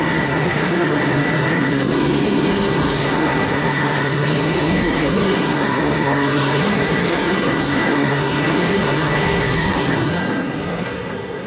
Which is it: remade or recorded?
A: remade